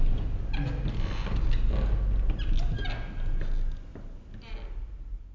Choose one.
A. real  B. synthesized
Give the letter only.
A